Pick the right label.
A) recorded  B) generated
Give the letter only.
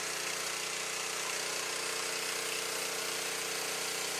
A